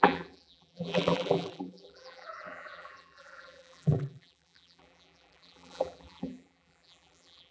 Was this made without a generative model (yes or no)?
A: no